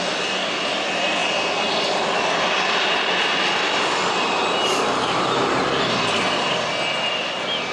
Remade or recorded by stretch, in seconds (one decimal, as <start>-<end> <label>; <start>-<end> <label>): 0.0-7.7 recorded